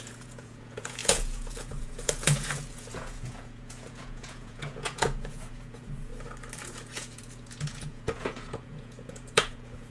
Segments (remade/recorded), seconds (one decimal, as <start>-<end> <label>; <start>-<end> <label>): 0.0-6.1 remade; 6.1-6.6 recorded; 6.6-9.9 remade